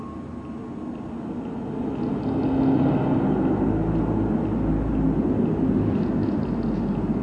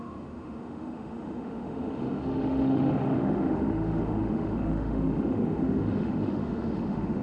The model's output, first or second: second